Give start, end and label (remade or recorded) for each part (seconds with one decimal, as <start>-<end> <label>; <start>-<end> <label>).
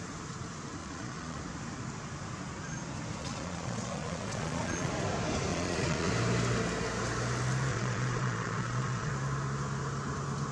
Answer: 0.0-0.8 recorded; 0.8-1.4 remade; 1.4-3.2 recorded; 3.2-4.9 remade; 4.9-5.5 recorded; 5.5-6.1 remade; 6.1-7.7 recorded; 7.7-9.1 remade; 9.1-10.5 recorded